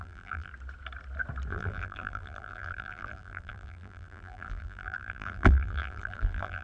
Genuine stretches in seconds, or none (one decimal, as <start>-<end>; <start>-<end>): 0.5-1.5